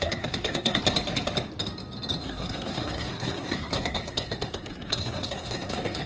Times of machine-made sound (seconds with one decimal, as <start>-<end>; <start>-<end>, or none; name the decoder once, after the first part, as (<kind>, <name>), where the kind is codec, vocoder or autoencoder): 0.0-0.8 (codec, SNAC); 2.2-6.1